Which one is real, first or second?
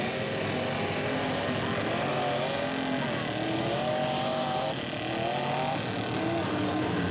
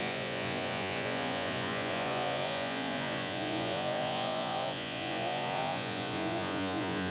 first